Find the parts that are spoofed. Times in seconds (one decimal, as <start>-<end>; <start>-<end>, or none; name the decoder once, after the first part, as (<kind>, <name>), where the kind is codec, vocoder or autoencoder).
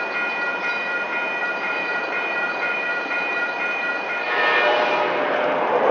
1.4-4.9 (vocoder, BigVGAN v2)